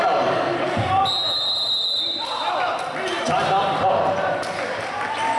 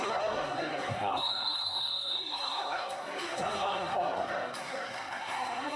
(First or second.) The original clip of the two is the first